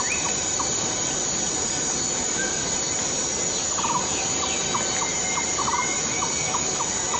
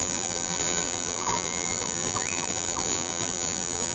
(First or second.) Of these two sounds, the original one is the first